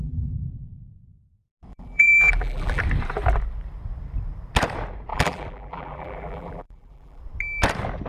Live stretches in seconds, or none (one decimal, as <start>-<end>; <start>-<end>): 0.5-1.7; 2.8-5.1; 7.2-8.1